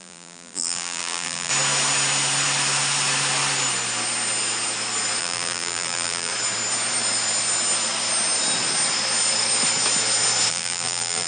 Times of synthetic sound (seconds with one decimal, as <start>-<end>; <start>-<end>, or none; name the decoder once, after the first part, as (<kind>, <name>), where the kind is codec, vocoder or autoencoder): 0.0-1.5 (vocoder, BigVGAN v2); 5.2-6.3; 10.5-11.3